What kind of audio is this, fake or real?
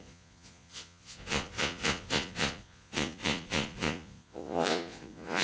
fake